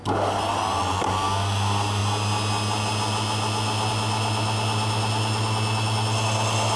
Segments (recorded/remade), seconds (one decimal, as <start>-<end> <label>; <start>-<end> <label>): 0.0-6.8 recorded